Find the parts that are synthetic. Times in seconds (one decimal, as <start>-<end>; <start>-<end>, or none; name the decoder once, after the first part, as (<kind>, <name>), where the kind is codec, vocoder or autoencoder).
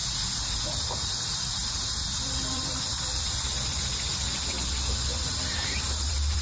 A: 0.8-6.4 (vocoder, BigVGAN v2)